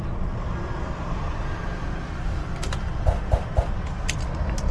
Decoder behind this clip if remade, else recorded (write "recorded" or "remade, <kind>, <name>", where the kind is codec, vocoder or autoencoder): remade, vocoder, BigVGAN v2